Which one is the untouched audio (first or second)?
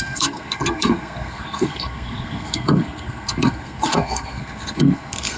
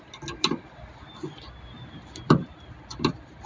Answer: second